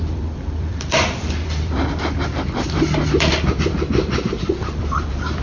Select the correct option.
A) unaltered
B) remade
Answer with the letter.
B